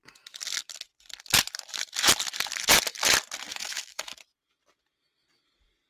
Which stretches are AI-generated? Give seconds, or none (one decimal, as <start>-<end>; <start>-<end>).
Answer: 3.5-4.2